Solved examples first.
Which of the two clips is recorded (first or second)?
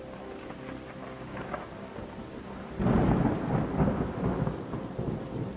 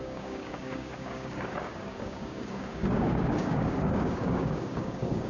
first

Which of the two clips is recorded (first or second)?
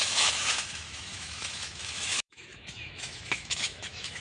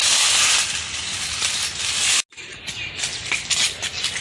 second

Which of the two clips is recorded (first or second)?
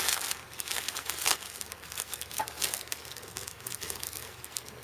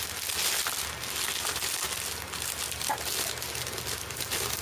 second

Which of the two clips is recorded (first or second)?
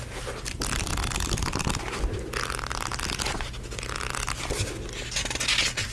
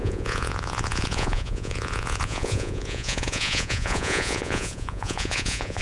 first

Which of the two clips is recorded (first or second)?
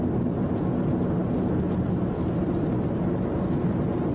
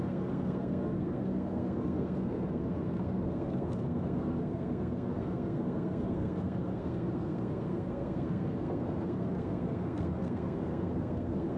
first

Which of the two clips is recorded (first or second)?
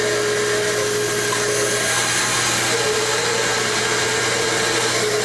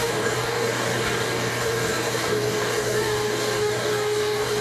first